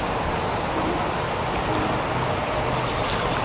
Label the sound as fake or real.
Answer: real